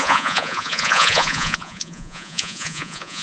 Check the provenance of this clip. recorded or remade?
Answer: remade